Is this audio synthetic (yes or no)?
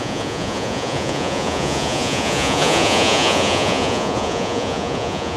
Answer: yes